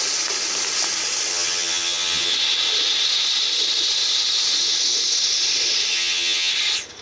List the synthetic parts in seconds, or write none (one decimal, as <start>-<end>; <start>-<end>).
1.3-2.3; 5.9-6.5